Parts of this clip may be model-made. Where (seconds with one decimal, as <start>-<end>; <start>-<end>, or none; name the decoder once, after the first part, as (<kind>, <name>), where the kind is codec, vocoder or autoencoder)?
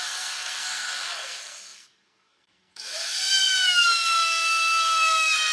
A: 0.0-5.5 (codec, SNAC)